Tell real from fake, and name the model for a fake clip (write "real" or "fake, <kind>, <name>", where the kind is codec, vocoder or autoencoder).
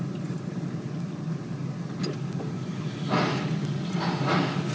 real